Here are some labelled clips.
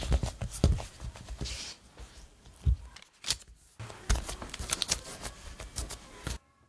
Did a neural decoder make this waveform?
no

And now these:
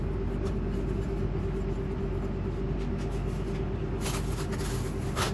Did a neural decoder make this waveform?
no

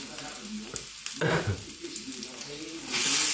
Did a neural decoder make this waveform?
no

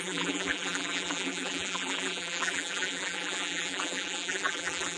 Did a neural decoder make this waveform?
yes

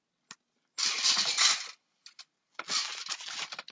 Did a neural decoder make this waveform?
no